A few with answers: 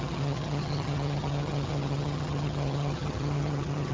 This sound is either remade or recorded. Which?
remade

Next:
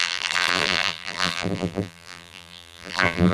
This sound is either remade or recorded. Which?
remade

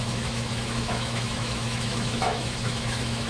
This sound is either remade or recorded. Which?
remade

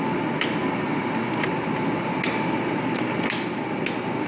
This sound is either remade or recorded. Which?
recorded